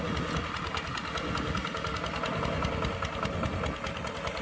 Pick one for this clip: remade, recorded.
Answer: recorded